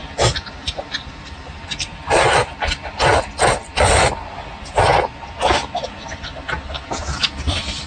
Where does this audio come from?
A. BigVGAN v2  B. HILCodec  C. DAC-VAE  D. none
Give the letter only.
D